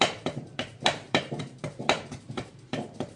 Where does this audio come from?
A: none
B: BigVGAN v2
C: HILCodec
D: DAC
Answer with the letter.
B